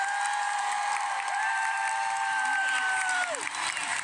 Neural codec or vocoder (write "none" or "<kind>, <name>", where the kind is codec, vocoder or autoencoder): vocoder, BigVGAN v2